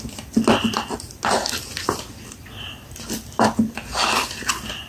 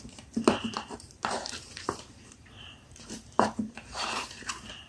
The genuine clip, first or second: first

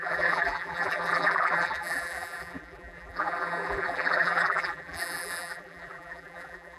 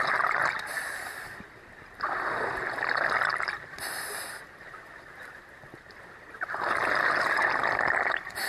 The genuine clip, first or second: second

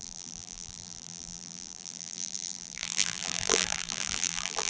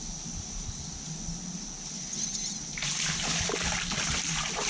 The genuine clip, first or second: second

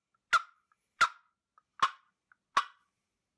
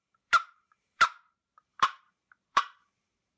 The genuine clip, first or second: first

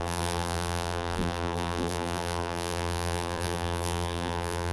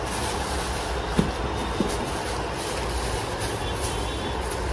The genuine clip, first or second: second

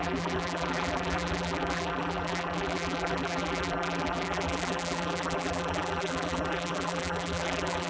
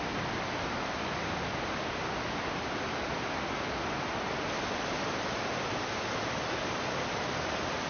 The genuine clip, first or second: second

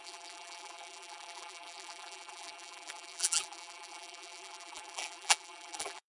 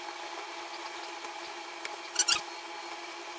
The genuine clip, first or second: second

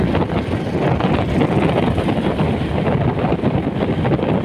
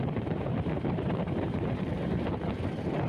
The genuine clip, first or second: first